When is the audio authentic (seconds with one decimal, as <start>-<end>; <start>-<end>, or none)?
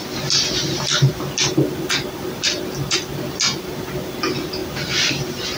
0.0-5.6